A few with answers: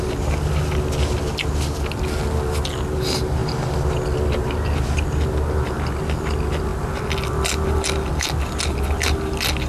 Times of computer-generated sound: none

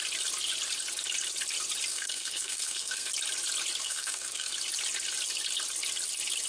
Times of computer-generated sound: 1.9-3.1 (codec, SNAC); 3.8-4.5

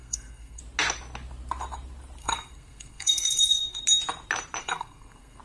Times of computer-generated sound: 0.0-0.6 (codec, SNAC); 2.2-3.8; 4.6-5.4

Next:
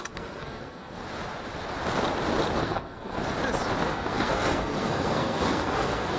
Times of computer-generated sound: 0.0-1.0 (codec, SNAC); 2.6-3.2; 3.8-6.2

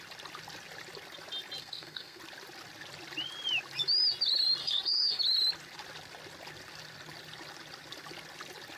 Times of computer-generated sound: 1.6-2.2 (codec, SNAC); 4.6-5.2

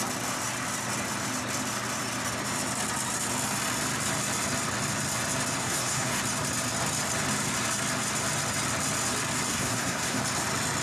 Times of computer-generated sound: 5.6-6.2 (codec, SNAC); 9.5-10.2

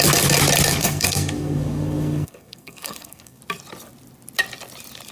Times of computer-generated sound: 0.8-3.4 (codec, SNAC)

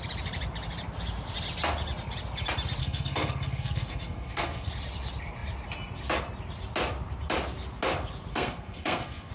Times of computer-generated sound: 2.8-4.7 (codec, SNAC); 8.3-9.3